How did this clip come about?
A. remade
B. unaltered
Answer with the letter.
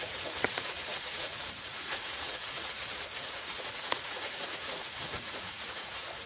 A